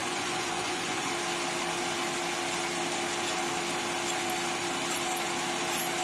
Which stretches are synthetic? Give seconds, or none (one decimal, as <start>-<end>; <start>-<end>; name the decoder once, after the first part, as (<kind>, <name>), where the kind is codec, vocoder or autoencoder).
0.0-1.1 (vocoder, Vocos)